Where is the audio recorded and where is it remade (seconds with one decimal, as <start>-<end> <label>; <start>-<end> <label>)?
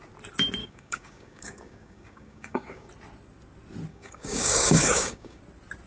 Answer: 0.0-0.6 recorded; 0.6-2.9 remade; 2.9-3.9 recorded; 3.9-5.4 remade; 5.4-5.9 recorded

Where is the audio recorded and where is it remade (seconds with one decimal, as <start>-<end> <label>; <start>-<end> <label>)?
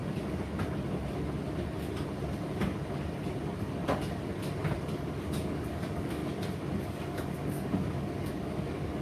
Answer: 0.0-4.9 recorded; 4.9-6.2 remade; 6.2-6.8 recorded; 6.8-9.0 remade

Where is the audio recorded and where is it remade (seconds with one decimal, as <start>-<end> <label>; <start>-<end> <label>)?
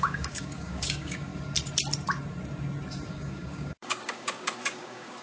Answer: 0.0-1.3 remade; 1.3-3.1 recorded; 3.1-5.2 remade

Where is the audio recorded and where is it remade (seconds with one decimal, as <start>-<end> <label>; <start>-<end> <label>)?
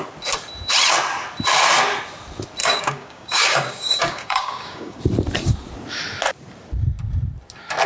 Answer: 0.0-2.6 recorded; 2.6-5.0 remade; 5.0-7.9 recorded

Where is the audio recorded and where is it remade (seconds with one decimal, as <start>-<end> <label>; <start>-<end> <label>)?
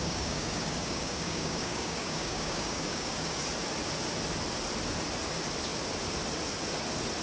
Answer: 0.0-3.4 remade; 3.4-7.2 recorded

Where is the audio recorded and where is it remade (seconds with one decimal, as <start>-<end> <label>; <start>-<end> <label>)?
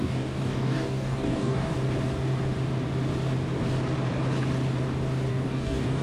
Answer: 0.0-1.7 remade; 1.7-5.3 recorded; 5.3-6.0 remade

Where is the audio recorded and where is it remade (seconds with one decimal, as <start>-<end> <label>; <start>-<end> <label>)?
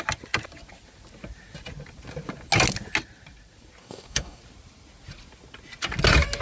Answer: 0.0-3.8 recorded; 3.8-4.4 remade; 4.4-6.4 recorded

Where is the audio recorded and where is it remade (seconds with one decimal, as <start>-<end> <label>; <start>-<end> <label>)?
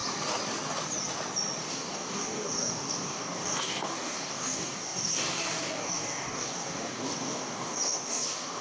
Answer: 0.0-1.6 recorded; 1.6-8.6 remade